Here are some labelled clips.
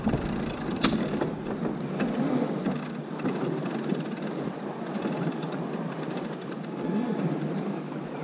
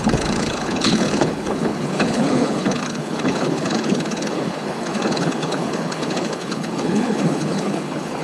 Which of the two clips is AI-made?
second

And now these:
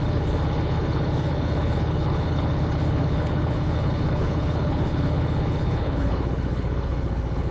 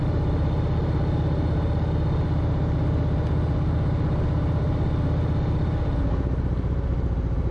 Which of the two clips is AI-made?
first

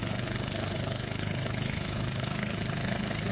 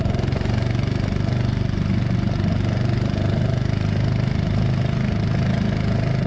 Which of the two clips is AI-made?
first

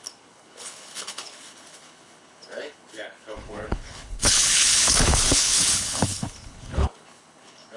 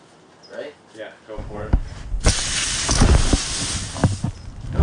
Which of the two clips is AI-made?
first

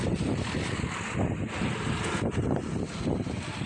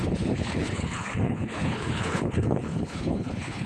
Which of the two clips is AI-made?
second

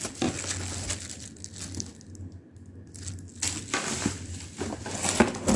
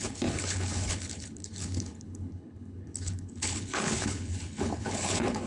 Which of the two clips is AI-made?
second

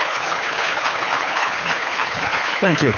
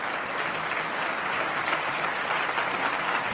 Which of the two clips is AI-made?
first